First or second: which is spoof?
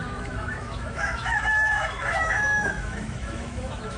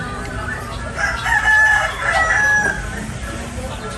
first